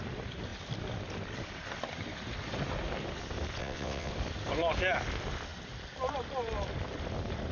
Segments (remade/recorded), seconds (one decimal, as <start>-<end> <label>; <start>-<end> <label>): 0.0-3.6 recorded; 3.6-4.1 remade; 4.1-7.5 recorded